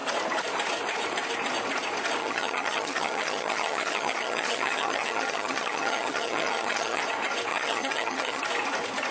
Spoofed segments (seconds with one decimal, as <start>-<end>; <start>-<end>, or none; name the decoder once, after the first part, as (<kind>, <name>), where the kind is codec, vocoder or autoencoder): 2.2-7.0 (vocoder, HiFi-GAN); 7.5-8.4